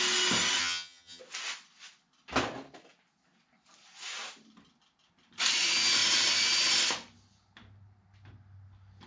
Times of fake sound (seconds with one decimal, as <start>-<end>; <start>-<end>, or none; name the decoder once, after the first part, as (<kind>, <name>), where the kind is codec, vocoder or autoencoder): 0.6-1.2 (vocoder, HiFi-GAN)